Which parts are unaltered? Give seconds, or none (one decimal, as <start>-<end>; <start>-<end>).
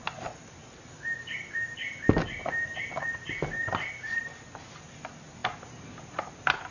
0.0-6.7